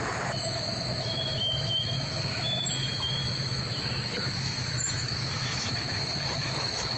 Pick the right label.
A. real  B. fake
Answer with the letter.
B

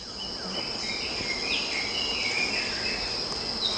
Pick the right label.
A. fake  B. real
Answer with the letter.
B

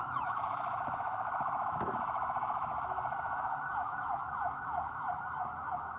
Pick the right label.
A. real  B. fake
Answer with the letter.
B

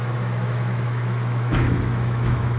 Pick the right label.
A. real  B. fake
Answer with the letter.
B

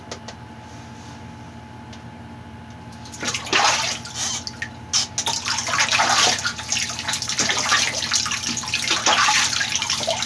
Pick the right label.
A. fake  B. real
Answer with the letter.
B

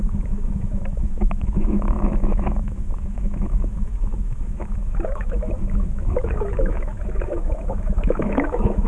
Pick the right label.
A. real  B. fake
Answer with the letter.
B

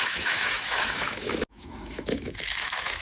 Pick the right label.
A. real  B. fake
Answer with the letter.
B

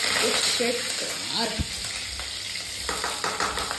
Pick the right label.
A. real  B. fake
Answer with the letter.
A